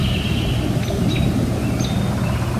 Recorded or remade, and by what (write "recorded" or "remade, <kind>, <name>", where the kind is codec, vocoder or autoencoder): recorded